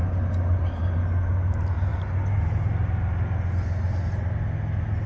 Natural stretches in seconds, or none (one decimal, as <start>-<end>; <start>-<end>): 0.0-5.1